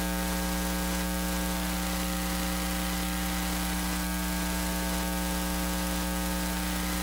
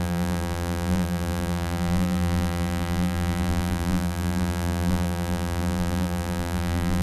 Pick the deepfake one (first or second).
second